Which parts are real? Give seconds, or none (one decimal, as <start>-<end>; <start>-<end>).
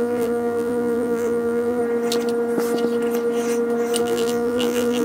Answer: 1.8-4.0